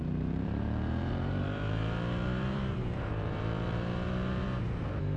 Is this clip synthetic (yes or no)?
yes